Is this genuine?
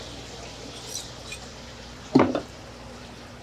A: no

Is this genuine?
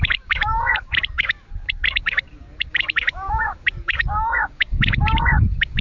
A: no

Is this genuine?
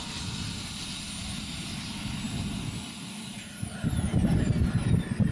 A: yes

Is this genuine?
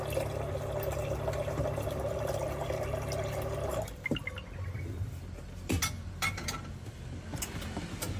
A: yes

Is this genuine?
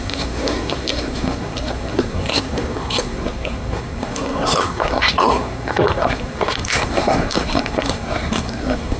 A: no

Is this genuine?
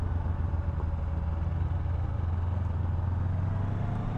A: yes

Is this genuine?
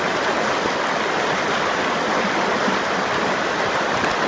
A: yes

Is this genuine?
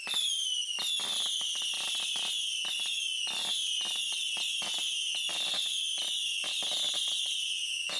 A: yes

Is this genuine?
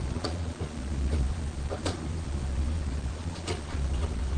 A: no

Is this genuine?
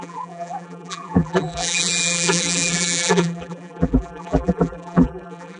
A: no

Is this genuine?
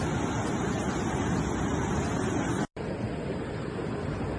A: yes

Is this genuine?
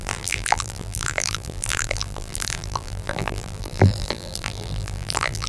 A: no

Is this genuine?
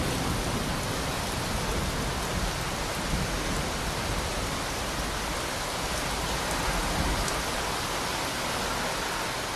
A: yes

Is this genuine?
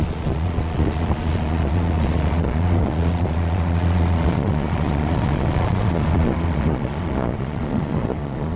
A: no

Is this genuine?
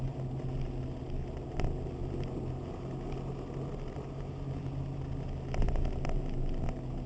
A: yes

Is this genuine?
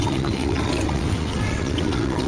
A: no